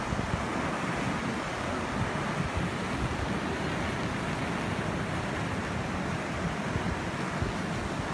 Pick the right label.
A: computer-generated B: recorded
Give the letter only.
B